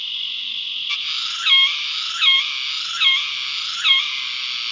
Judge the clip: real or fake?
real